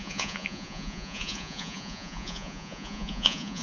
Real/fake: fake